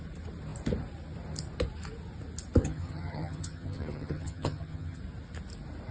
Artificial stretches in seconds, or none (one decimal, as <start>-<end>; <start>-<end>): 2.6-5.0